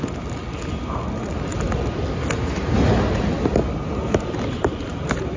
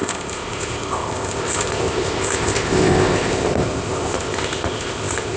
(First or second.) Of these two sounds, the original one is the first